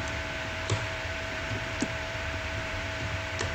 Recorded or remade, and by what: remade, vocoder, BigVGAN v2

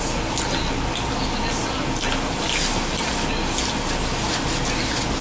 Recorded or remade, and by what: recorded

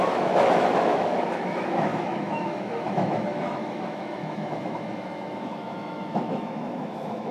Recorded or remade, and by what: remade, autoencoder, DAC-VAE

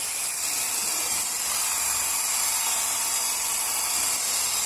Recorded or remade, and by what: recorded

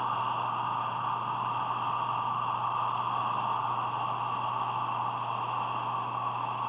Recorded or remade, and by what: recorded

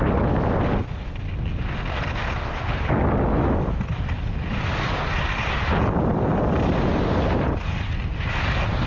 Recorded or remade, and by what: recorded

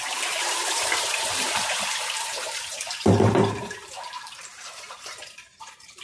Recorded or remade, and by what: remade, vocoder, BigVGAN v2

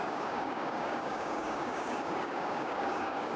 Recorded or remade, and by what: remade, codec, DAC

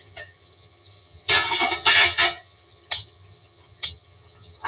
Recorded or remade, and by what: remade, vocoder, HiFi-GAN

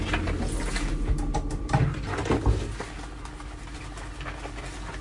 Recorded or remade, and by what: recorded